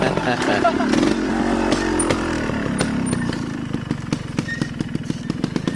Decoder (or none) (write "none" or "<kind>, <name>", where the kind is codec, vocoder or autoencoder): none